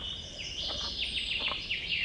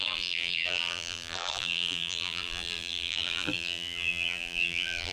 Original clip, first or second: first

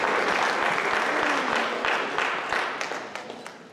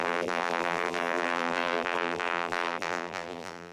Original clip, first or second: first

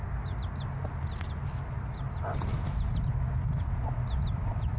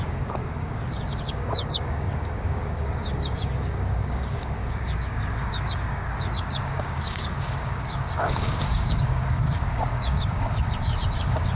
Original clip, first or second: first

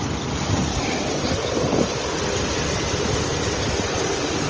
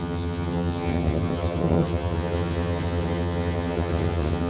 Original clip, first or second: first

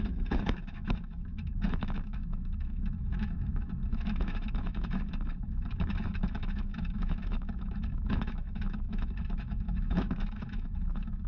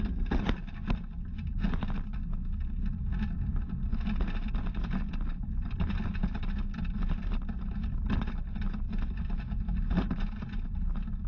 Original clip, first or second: second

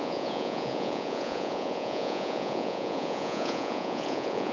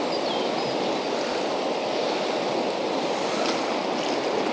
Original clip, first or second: second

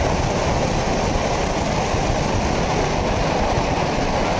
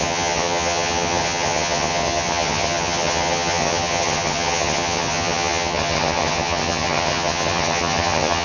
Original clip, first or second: first